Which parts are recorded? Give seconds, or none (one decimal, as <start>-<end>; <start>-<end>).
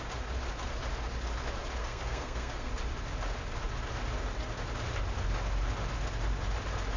0.0-1.8; 2.7-7.0